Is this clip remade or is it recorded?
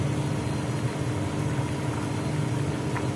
recorded